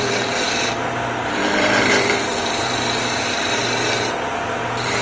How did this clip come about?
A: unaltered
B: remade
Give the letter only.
B